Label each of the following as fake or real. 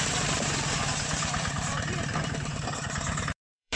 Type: fake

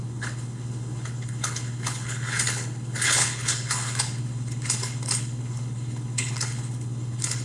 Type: fake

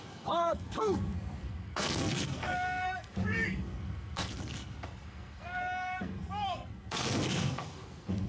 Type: fake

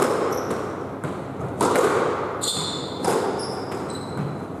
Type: real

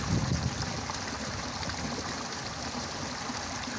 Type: real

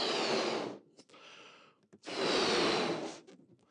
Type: real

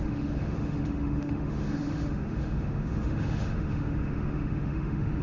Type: fake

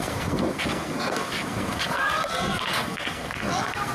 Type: fake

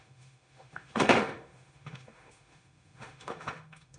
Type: fake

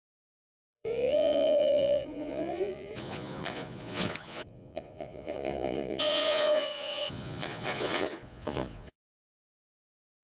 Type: fake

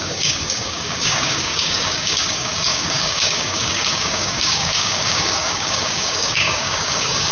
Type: fake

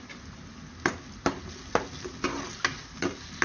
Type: real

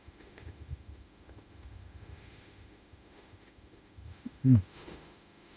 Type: fake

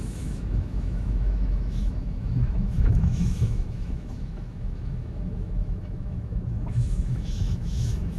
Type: fake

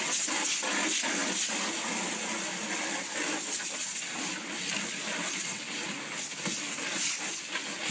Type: real